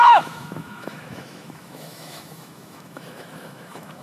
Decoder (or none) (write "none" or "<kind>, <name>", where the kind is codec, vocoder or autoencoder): autoencoder, DAC-VAE